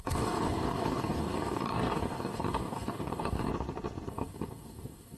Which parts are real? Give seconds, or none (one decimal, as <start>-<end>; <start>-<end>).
3.5-4.1

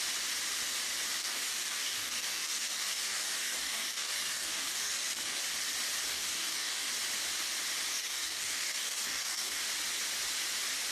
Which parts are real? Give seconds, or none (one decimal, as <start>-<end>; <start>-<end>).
0.0-1.2; 5.4-6.1; 6.9-7.9; 9.6-10.9

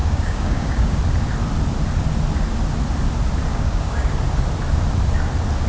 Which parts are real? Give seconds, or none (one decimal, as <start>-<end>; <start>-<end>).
1.0-3.5; 4.1-5.7

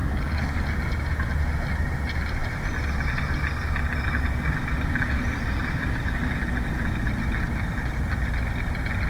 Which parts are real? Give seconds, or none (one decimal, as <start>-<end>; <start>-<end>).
0.6-9.1

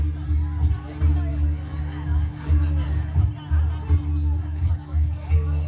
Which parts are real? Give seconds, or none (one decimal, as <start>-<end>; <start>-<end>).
0.0-1.3; 3.2-4.4

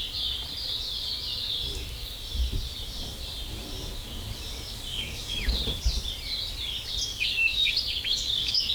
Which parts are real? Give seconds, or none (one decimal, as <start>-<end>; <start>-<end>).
0.0-4.9; 5.6-7.1